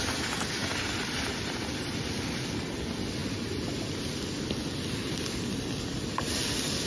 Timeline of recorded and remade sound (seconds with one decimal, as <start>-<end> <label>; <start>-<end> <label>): 0.0-6.9 recorded